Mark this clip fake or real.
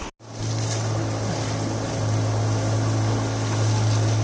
real